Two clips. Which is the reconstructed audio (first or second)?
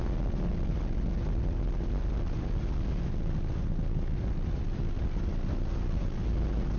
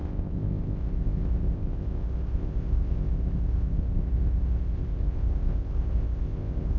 second